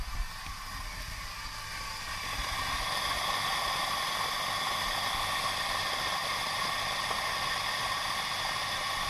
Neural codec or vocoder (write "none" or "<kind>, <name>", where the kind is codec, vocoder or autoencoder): none